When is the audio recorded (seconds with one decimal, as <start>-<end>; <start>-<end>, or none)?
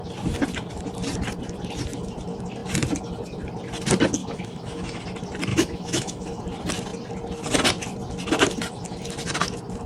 0.0-4.2; 5.0-5.5; 6.4-9.9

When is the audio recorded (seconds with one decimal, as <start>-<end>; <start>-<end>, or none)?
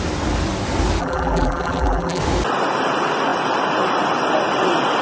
0.0-1.0; 2.2-5.0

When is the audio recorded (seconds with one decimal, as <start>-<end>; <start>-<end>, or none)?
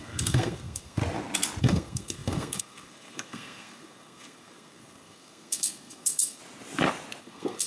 1.0-1.6; 6.4-7.2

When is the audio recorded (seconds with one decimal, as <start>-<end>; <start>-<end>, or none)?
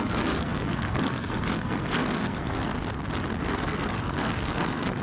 2.7-3.4